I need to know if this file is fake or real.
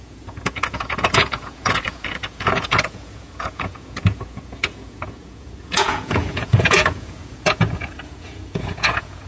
fake